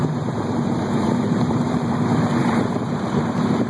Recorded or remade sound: remade